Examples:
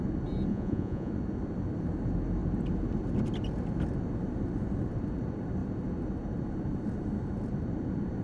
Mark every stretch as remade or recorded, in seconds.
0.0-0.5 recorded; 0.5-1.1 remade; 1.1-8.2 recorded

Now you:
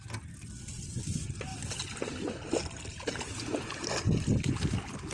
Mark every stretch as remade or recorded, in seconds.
0.0-2.9 recorded; 2.9-3.7 remade; 3.7-5.1 recorded

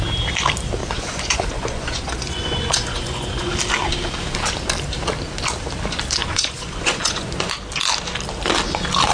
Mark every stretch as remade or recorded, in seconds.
0.0-0.8 recorded; 0.8-3.5 remade; 3.5-6.2 recorded; 6.2-7.3 remade; 7.3-9.1 recorded

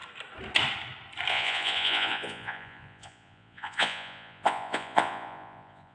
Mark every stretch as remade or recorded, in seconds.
0.0-1.3 recorded; 1.3-5.9 remade

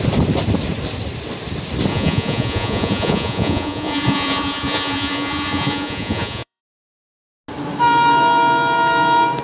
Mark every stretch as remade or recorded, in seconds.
0.0-1.9 recorded; 1.9-6.6 remade; 6.6-9.4 recorded

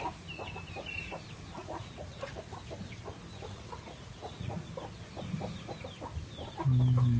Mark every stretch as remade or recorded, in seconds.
0.0-1.6 recorded; 1.6-2.5 remade; 2.5-3.3 recorded; 3.3-4.7 remade; 4.7-7.2 recorded

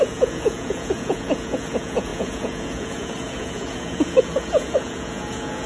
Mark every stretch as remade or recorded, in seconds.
0.0-5.7 remade